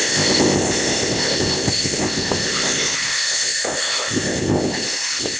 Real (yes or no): no